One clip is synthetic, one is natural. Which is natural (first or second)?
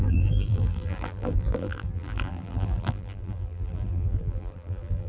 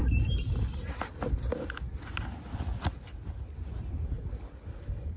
second